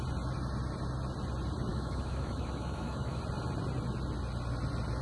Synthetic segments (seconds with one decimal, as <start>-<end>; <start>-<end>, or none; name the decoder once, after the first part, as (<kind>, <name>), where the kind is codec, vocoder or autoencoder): 1.7-3.2 (autoencoder, DAC-VAE)